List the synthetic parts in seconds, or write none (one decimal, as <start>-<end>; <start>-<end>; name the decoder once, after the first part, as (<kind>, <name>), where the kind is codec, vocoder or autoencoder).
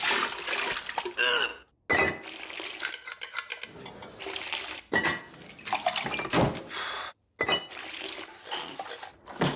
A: none